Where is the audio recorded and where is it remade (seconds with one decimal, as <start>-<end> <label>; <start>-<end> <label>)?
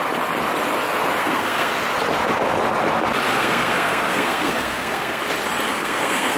0.0-1.2 recorded; 1.2-1.7 remade; 1.7-3.3 recorded; 3.3-5.2 remade; 5.2-5.7 recorded; 5.7-6.4 remade